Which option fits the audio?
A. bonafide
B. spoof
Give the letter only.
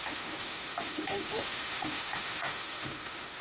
B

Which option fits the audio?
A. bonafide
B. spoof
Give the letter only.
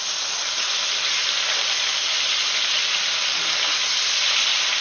A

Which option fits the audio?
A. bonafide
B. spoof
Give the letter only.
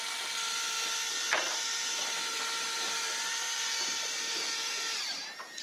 A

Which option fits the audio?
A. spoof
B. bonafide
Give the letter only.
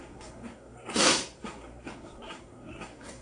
A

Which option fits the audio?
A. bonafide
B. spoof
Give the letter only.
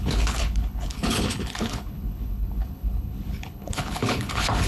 B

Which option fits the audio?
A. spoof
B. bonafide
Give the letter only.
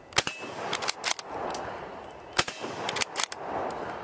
B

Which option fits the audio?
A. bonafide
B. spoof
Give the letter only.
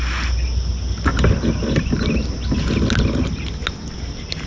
A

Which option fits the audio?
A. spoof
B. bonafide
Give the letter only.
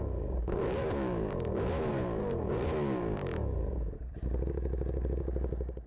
A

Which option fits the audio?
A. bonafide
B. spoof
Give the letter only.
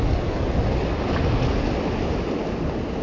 A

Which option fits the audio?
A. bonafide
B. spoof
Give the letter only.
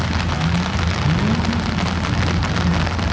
A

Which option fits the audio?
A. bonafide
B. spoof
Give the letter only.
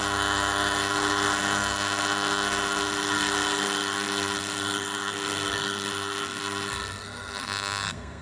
B